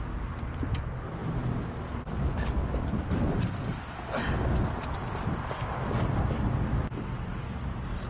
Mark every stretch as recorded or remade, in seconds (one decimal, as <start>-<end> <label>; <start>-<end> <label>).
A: 0.0-8.1 recorded